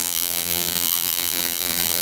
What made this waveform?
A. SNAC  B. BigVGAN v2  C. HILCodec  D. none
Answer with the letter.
B